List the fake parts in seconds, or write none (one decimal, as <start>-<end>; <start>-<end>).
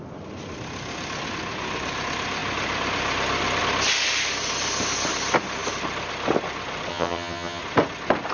6.9-7.6